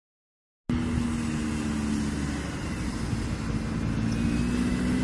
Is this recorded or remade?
recorded